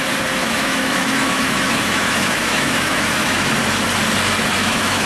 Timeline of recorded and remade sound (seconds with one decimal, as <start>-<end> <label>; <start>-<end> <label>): 0.0-0.4 recorded; 0.4-3.5 remade; 3.5-4.6 recorded; 4.6-5.1 remade